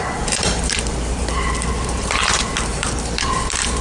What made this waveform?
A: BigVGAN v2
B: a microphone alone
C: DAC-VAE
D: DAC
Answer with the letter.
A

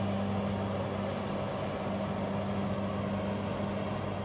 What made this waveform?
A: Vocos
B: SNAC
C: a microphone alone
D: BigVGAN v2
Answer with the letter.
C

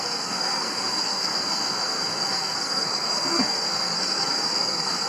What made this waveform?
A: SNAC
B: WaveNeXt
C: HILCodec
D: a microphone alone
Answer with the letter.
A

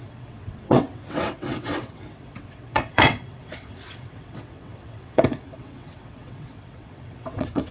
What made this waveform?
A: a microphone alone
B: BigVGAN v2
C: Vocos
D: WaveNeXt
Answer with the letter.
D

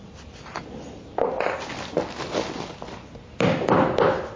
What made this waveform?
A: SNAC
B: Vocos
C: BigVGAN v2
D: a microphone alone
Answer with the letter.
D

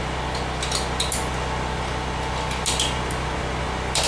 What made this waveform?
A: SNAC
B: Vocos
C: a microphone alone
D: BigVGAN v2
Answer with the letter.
C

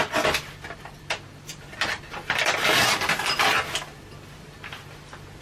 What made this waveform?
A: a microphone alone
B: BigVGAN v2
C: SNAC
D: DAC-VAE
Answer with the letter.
A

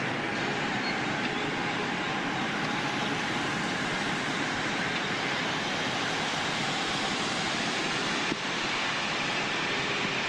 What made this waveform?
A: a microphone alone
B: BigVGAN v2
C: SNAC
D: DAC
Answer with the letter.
B